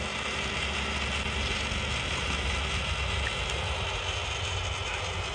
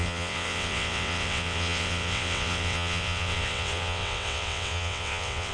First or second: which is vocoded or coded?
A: second